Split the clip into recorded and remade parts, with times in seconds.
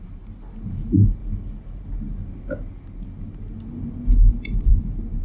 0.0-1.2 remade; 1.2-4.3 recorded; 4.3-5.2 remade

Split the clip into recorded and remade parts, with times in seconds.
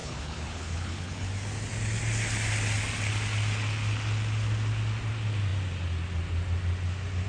0.0-1.3 remade; 1.3-7.3 recorded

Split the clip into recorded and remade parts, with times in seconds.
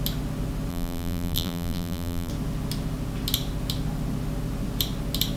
0.0-0.7 recorded; 0.7-2.3 remade; 2.3-5.4 recorded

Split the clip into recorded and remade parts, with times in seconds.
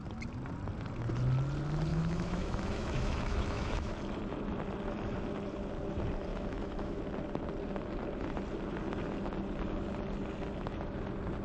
0.0-1.9 recorded; 1.9-3.9 remade; 3.9-6.3 recorded; 6.3-7.0 remade; 7.0-11.4 recorded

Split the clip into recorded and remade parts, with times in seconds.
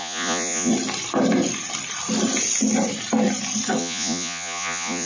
0.0-0.7 remade; 0.7-3.8 recorded; 3.8-5.1 remade